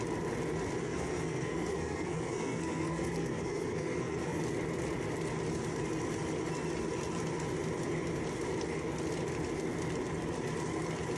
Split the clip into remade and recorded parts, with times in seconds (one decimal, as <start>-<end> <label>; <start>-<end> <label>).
0.0-0.8 recorded; 0.8-4.4 remade; 4.4-11.2 recorded